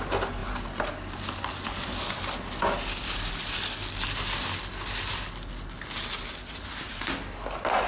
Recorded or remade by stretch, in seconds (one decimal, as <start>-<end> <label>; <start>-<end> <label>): 0.0-7.9 recorded